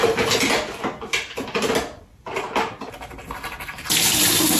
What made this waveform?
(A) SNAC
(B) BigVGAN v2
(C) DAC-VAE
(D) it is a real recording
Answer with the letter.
D